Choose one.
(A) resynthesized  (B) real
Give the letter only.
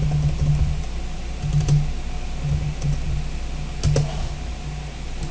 B